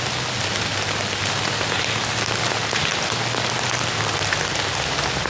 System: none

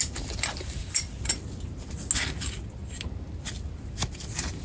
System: none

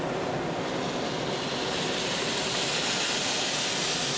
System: none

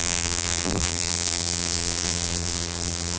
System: vocoder, BigVGAN v2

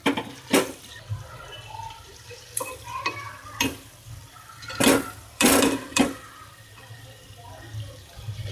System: vocoder, BigVGAN v2